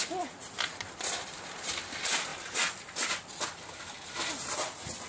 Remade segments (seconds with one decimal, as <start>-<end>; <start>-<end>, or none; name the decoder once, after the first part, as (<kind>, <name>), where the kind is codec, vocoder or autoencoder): none